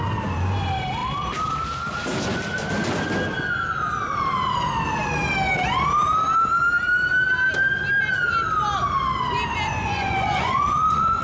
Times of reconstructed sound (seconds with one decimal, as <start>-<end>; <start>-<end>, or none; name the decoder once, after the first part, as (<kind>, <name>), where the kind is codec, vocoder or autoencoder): 9.7-11.2 (vocoder, Vocos)